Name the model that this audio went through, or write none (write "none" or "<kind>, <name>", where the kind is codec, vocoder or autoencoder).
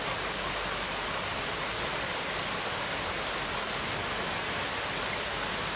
none